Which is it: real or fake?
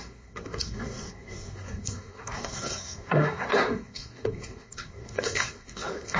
fake